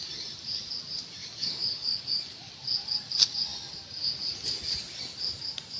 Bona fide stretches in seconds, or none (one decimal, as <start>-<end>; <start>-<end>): 0.0-1.2; 2.5-5.8